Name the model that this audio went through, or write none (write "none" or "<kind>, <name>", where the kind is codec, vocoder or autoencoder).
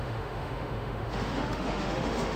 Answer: autoencoder, DAC-VAE